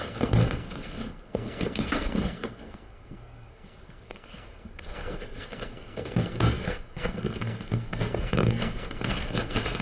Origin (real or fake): fake